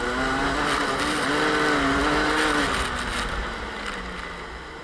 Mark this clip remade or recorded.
recorded